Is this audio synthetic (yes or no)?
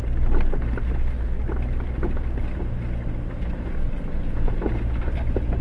no